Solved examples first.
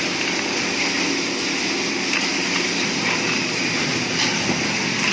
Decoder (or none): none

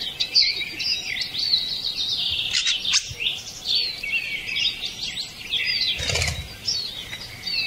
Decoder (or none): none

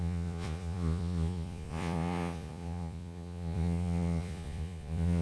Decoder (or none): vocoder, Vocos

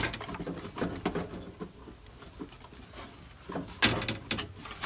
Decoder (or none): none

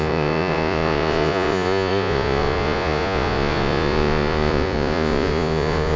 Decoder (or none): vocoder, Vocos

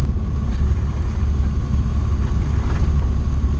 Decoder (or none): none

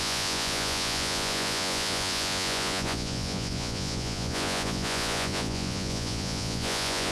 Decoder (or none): vocoder, Vocos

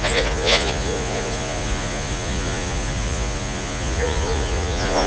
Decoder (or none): vocoder, Vocos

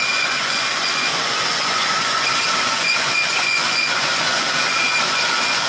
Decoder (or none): vocoder, Vocos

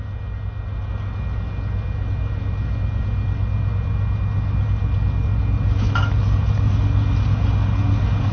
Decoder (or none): none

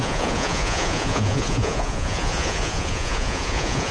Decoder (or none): vocoder, Vocos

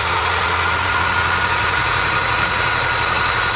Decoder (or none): vocoder, Vocos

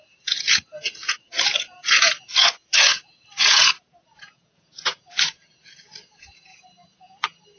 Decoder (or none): vocoder, Vocos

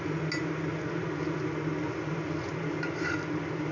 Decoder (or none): none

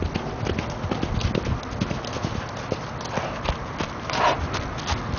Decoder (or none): none